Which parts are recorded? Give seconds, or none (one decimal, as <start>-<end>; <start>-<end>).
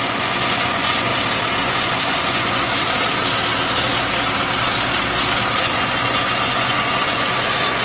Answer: 1.1-1.6; 2.8-5.6